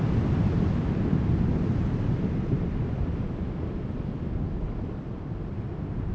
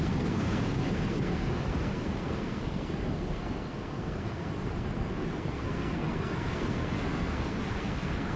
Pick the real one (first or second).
first